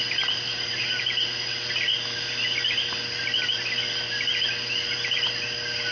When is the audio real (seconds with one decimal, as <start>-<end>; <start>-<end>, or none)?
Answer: 0.0-3.5; 4.5-5.9